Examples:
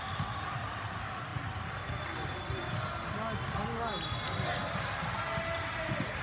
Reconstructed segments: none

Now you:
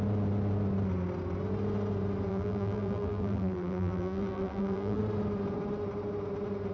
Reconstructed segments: 2.3-5.0 (vocoder, BigVGAN v2)

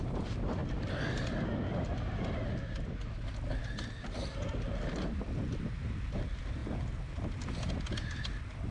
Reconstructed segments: 0.0-0.6 (vocoder, BigVGAN v2); 4.9-8.7

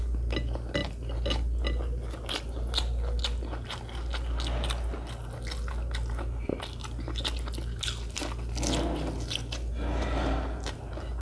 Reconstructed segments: none